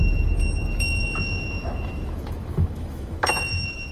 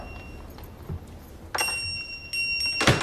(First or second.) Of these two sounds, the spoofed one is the first